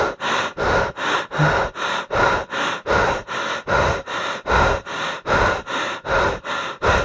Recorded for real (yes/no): yes